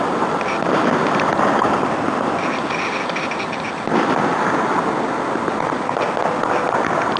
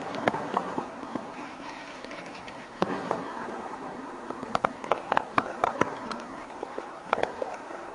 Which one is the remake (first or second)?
second